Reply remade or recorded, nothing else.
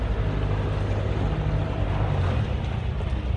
recorded